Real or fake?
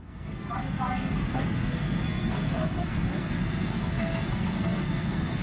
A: fake